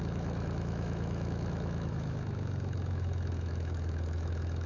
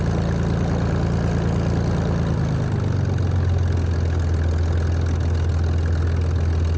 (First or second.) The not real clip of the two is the first